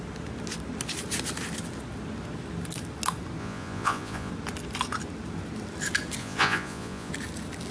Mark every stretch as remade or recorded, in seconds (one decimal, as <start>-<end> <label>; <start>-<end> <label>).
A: 0.0-3.4 recorded; 3.4-4.3 remade; 4.3-6.2 recorded; 6.2-7.1 remade; 7.1-7.7 recorded